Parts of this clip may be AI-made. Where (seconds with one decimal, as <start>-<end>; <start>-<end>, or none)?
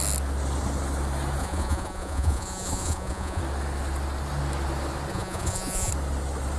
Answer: 1.4-3.4; 5.1-5.9